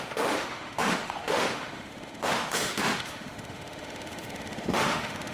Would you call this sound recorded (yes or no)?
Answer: no